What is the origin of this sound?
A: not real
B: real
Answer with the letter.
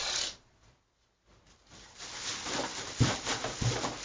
B